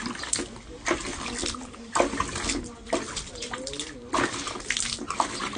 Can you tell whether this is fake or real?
real